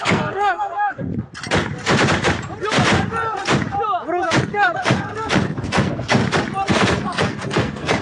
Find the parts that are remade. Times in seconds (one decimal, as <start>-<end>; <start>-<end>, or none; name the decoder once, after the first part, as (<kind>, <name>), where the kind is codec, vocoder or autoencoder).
0.0-1.1 (codec, SNAC); 4.4-6.2; 6.7-8.0